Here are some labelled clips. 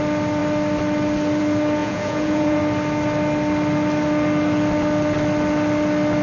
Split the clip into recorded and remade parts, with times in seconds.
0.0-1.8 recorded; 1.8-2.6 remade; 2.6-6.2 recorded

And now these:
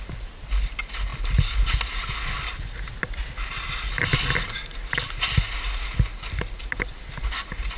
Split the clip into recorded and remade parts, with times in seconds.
0.0-7.8 recorded